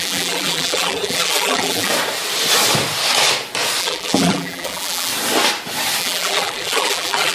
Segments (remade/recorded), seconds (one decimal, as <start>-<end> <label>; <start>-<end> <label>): 0.0-1.9 remade; 1.9-3.8 recorded; 3.8-5.1 remade; 5.1-6.0 recorded; 6.0-7.3 remade